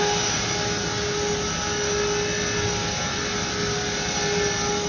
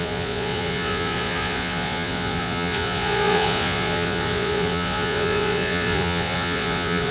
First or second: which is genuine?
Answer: first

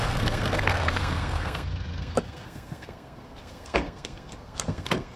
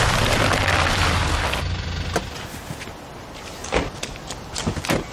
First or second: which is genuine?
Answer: second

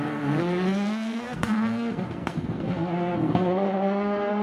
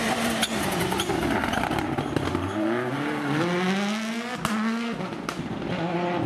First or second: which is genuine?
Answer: second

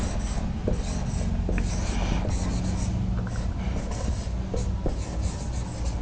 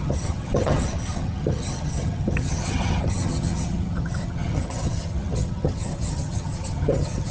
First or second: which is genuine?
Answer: first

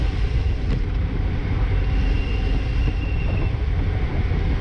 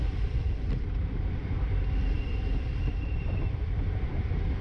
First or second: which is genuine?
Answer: first